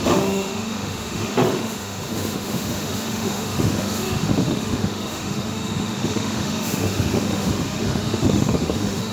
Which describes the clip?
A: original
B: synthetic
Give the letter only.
B